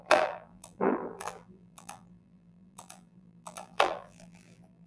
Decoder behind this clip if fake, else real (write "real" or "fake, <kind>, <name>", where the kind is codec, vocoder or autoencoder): fake, vocoder, BigVGAN v2